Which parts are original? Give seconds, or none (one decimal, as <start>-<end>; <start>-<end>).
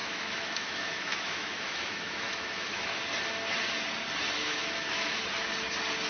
3.0-4.4; 5.2-6.1